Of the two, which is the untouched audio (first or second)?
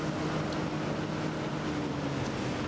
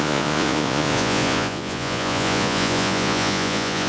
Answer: first